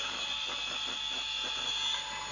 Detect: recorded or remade recorded